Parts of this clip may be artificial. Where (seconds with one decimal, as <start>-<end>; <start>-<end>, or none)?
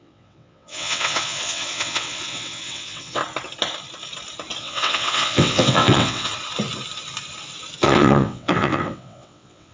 0.0-3.2; 4.6-6.3; 7.8-9.7